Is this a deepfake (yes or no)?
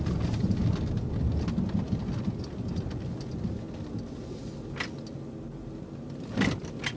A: no